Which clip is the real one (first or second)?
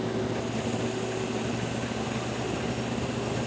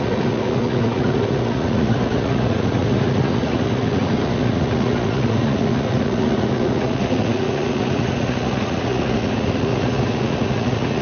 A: first